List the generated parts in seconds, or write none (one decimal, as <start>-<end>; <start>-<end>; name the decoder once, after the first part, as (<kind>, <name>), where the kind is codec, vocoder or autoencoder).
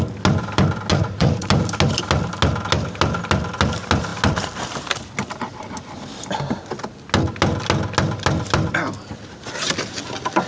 0.9-1.5 (vocoder, Vocos)